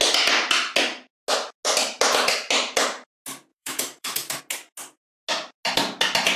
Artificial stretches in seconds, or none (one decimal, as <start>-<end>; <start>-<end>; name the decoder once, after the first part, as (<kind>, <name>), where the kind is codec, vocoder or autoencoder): 3.5-4.4 (autoencoder, DAC-VAE)